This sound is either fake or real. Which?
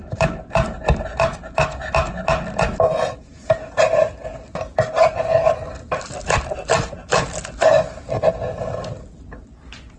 real